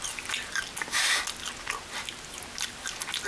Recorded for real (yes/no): yes